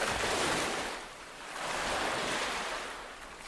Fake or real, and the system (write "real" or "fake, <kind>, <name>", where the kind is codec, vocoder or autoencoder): real